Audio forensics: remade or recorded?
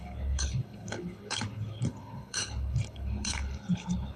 remade